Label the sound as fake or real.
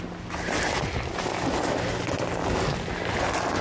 real